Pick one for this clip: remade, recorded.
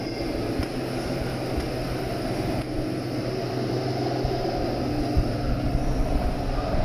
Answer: recorded